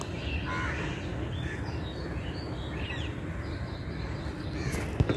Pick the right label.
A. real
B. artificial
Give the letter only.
A